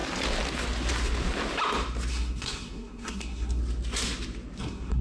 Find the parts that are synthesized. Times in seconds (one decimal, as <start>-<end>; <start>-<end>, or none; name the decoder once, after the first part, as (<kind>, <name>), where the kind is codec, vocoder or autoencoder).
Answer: 2.1-3.6 (codec, SNAC); 4.6-5.0